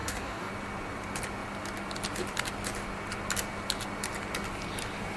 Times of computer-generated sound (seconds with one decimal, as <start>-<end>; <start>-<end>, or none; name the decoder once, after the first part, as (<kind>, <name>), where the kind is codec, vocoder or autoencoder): 0.0-0.5 (codec, DAC)